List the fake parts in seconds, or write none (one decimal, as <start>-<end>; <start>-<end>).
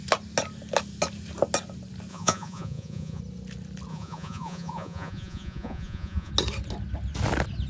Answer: 2.1-3.2; 3.9-6.3